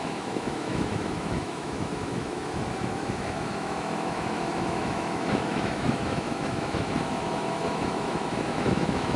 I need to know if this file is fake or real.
fake